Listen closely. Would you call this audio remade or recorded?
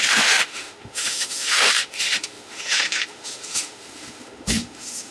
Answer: remade